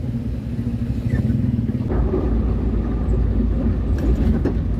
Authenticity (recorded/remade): recorded